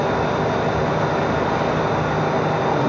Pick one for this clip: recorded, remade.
recorded